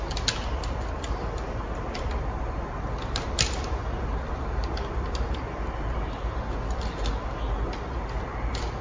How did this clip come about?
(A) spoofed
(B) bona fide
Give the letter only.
B